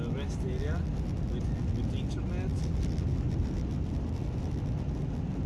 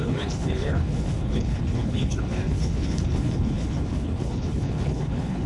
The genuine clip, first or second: first